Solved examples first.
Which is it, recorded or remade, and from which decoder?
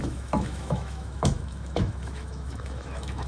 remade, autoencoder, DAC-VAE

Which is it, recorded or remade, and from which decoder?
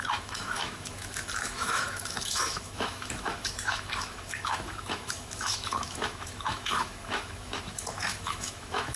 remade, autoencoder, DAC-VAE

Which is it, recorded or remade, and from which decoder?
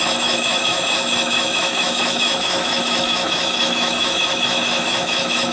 remade, autoencoder, DAC-VAE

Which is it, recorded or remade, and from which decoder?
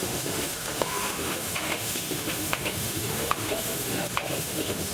remade, autoencoder, DAC-VAE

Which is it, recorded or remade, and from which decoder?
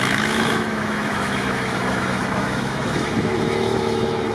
remade, autoencoder, DAC-VAE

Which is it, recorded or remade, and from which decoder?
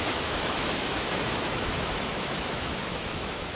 remade, autoencoder, DAC-VAE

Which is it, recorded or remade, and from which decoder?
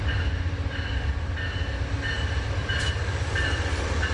recorded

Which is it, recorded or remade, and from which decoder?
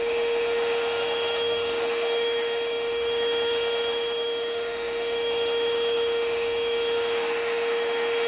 remade, autoencoder, DAC-VAE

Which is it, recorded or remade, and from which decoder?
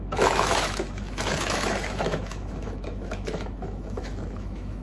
remade, autoencoder, DAC-VAE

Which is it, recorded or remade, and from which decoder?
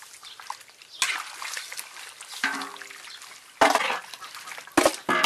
recorded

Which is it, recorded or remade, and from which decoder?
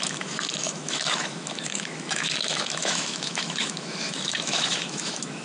remade, autoencoder, DAC-VAE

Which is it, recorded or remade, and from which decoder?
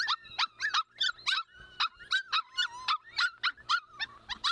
recorded